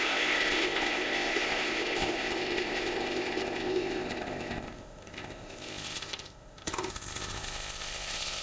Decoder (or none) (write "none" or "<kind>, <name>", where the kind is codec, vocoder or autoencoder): codec, ZipCodec